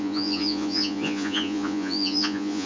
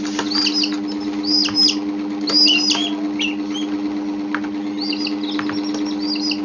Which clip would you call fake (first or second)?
first